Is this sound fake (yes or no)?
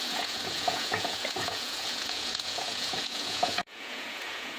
yes